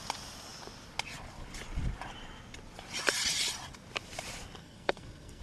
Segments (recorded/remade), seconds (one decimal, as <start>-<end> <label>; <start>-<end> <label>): 0.0-4.6 recorded; 4.6-5.4 remade